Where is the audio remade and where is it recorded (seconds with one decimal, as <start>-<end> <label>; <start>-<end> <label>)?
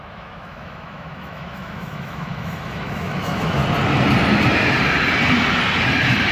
0.0-3.6 remade; 3.6-6.3 recorded